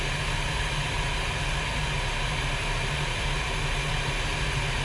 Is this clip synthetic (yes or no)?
no